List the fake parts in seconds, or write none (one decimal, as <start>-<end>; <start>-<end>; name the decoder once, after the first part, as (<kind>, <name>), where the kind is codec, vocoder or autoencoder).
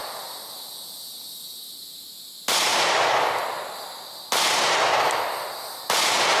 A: none